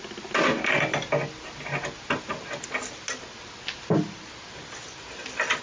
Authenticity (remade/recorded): recorded